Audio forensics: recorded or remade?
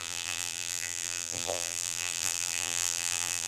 remade